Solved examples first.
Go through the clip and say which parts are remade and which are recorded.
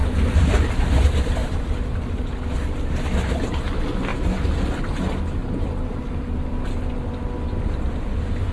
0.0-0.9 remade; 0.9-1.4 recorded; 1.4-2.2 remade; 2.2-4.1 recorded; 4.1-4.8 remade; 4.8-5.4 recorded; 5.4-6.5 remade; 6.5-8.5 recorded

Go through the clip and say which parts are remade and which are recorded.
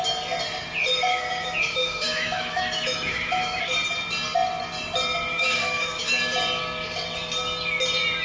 0.0-1.1 recorded; 1.1-3.6 remade; 3.6-5.3 recorded; 5.3-6.2 remade; 6.2-8.2 recorded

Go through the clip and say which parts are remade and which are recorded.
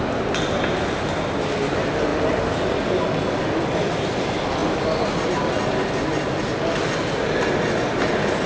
0.0-8.5 recorded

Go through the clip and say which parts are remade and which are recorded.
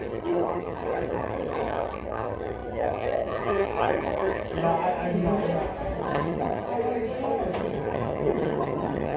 0.0-4.6 remade; 4.6-6.0 recorded; 6.0-6.7 remade; 6.7-7.6 recorded; 7.6-9.2 remade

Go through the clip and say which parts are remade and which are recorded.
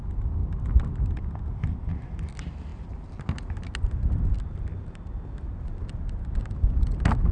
0.0-7.3 recorded